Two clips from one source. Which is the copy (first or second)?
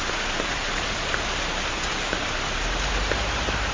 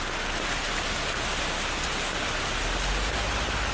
first